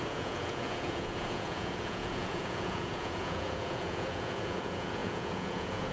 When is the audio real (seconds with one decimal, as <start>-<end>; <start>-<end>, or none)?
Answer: none